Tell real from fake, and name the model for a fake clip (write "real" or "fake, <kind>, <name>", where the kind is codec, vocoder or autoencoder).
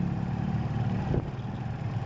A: real